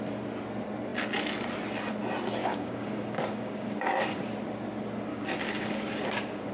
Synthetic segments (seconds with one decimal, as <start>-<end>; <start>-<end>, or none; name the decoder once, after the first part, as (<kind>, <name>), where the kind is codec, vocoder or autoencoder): 2.4-4.2 (codec, DAC); 5.1-6.5